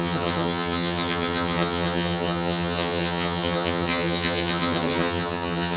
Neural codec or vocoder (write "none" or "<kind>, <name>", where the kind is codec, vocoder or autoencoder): vocoder, HiFi-GAN